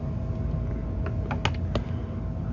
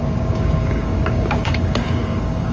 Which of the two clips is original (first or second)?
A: first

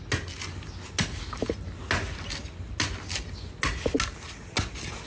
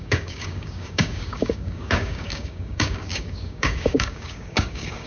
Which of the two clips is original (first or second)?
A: first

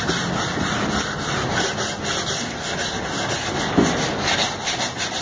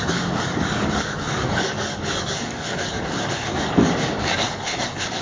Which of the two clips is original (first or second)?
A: first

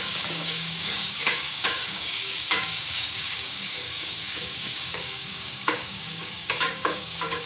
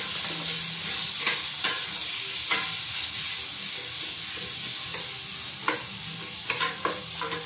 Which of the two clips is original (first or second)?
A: second